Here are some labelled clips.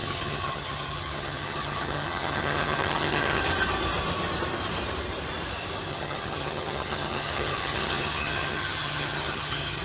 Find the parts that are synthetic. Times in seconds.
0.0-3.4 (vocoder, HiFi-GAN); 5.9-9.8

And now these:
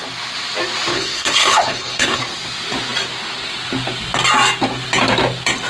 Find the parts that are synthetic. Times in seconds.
0.9-2.2 (codec, HILCodec)